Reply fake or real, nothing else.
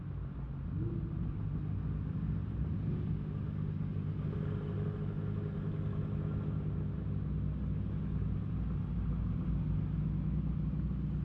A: real